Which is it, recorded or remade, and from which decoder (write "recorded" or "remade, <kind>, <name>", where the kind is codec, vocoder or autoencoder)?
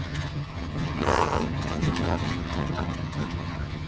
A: remade, vocoder, HiFi-GAN